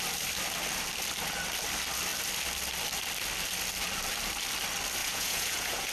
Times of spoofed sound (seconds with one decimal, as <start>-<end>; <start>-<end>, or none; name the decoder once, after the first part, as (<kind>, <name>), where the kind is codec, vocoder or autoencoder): 5.0-5.9 (vocoder, Vocos)